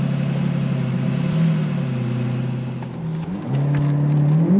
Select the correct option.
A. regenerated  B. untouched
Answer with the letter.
B